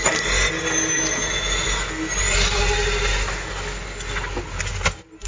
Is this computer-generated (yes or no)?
no